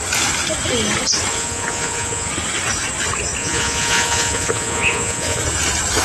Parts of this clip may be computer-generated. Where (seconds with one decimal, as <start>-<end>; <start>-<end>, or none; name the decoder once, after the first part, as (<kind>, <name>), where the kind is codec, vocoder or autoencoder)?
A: 1.3-2.3 (vocoder, Vocos); 3.4-5.4